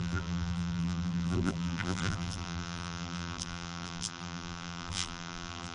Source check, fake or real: fake